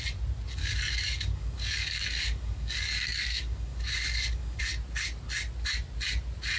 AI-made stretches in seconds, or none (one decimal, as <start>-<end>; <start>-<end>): 0.6-4.6